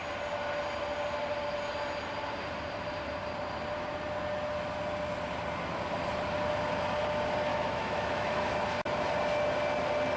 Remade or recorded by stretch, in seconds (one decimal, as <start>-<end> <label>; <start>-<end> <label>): 0.0-7.5 recorded; 7.5-8.5 remade; 8.5-10.2 recorded

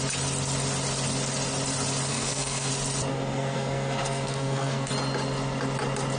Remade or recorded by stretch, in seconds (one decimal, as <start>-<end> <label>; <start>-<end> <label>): 0.0-2.1 recorded; 2.1-2.7 remade; 2.7-3.1 recorded; 3.1-4.9 remade; 4.9-6.2 recorded